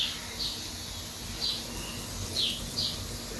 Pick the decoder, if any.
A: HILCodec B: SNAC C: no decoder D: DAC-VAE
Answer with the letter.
C